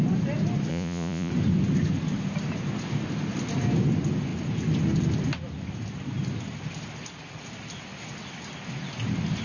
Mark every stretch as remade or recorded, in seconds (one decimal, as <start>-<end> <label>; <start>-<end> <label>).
0.0-0.7 recorded; 0.7-1.3 remade; 1.3-9.4 recorded